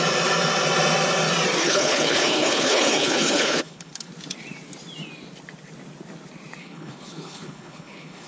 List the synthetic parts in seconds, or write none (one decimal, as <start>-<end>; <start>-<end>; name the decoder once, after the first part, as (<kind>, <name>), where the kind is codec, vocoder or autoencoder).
1.6-4.1 (codec, HILCodec); 6.6-8.3